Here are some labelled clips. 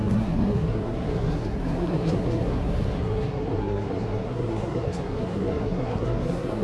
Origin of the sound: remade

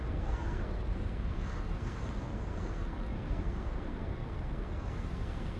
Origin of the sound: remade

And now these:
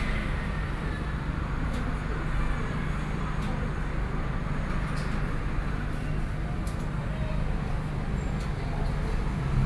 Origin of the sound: recorded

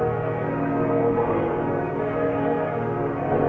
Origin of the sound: remade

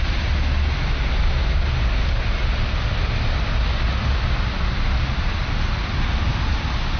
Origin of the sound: recorded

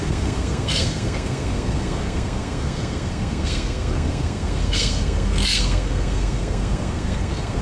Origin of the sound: remade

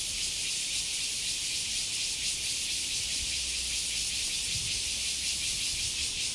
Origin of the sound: recorded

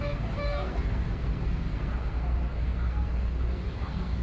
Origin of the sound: remade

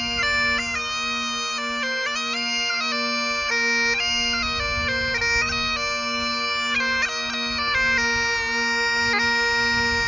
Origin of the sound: recorded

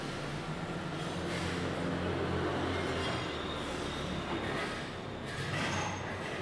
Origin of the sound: recorded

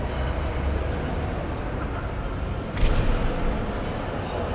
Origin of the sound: recorded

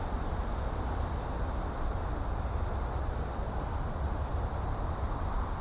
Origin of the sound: recorded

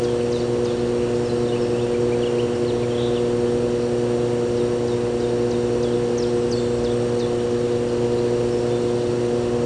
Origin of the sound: recorded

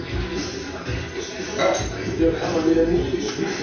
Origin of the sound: recorded